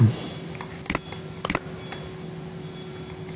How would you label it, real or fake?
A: real